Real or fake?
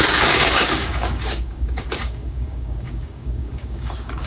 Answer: fake